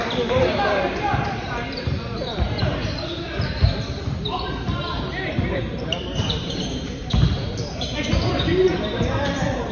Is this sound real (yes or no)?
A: no